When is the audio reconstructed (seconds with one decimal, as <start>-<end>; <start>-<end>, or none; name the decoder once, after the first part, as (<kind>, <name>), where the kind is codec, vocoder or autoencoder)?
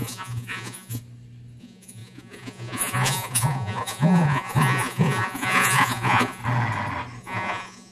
0.0-1.0 (vocoder, Vocos); 1.6-6.4; 7.2-7.9